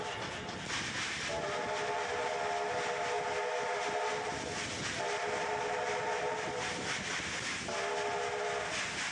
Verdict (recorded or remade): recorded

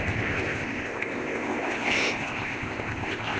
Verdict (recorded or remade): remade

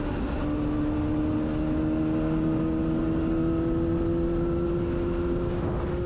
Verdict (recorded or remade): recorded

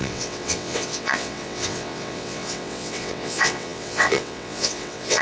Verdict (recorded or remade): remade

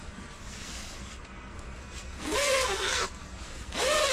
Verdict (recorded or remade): remade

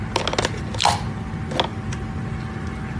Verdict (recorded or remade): recorded